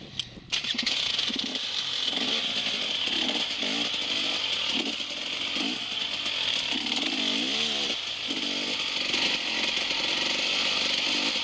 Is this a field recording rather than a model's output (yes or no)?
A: yes